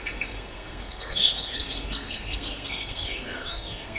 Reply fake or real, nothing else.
fake